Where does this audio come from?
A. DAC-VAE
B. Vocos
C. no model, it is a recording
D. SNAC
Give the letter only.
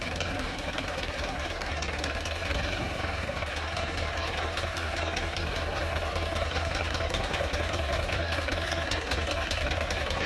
D